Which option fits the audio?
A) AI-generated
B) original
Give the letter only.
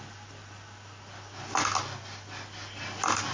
B